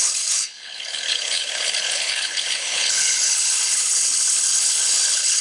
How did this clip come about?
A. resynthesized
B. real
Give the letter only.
A